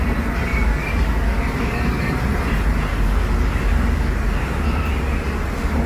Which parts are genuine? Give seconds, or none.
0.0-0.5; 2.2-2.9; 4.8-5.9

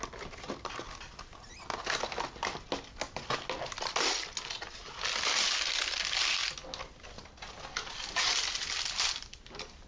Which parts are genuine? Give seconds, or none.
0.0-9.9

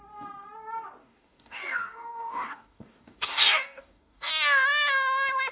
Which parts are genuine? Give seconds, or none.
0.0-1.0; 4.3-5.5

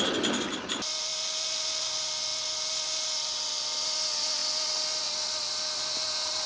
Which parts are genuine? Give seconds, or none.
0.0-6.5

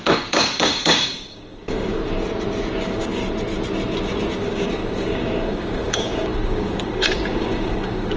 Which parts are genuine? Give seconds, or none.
2.0-2.8; 3.2-4.3

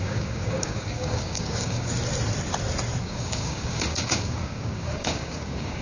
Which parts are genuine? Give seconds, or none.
1.9-3.0

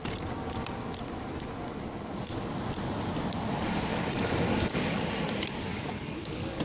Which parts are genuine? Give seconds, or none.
0.0-3.9; 5.1-5.7